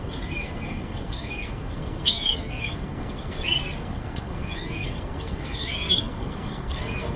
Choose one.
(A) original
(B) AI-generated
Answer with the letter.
B